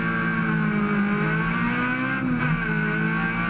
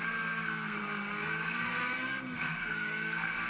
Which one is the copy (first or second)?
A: second